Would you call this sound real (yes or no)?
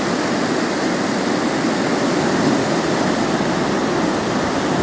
yes